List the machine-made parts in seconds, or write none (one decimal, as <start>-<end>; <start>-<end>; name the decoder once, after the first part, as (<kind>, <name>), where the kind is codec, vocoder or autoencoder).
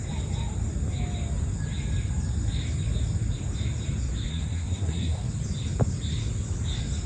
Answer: 4.3-5.3 (codec, SNAC)